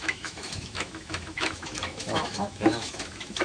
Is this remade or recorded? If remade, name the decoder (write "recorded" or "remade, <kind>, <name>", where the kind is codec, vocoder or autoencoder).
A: remade, autoencoder, DAC-VAE